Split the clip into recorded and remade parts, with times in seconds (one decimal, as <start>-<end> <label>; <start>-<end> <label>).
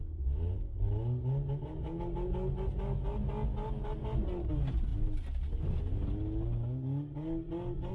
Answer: 0.0-7.9 recorded